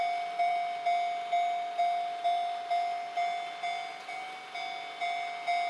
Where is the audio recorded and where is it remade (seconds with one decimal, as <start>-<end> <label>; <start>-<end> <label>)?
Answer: 0.0-5.7 recorded